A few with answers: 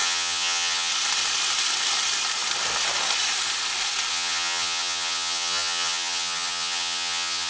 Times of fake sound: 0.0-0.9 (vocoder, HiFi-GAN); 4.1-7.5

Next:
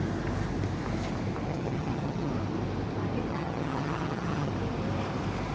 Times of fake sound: 1.5-2.3 (vocoder, HiFi-GAN); 3.3-4.5

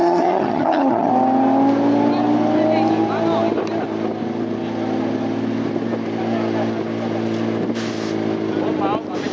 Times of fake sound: 0.0-1.1 (vocoder, HiFi-GAN)

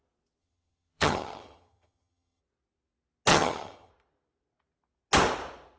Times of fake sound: 0.4-2.4 (vocoder, HiFi-GAN); 3.3-3.9